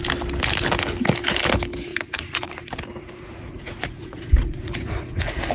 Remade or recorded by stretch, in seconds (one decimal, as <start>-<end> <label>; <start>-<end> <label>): 0.0-1.9 recorded; 1.9-2.6 remade; 2.6-3.0 recorded; 3.0-5.5 remade